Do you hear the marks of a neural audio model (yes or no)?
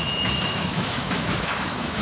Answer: yes